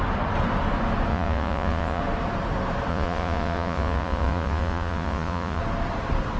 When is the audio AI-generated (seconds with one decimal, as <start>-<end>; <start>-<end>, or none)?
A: 1.1-2.0; 2.9-5.6